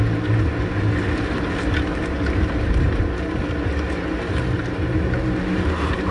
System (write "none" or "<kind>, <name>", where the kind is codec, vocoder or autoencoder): none